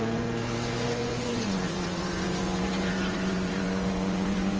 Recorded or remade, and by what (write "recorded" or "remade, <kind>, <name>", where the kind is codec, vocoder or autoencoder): remade, vocoder, Vocos